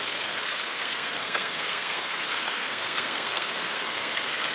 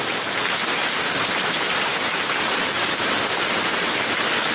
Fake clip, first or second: first